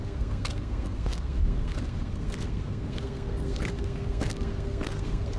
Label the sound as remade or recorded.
remade